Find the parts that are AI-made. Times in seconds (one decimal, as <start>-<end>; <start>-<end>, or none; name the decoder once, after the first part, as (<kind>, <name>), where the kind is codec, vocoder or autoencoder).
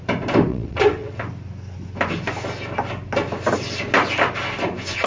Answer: 0.5-1.2 (vocoder, WaveNeXt)